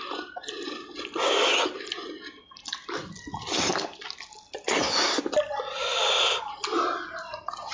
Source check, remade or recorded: recorded